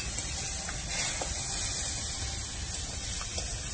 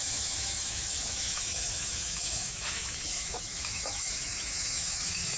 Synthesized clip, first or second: second